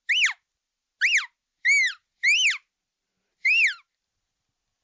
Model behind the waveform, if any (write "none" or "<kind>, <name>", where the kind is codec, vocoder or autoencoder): none